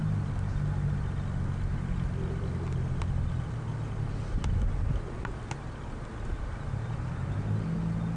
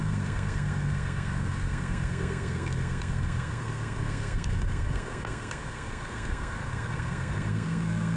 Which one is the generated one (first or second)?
second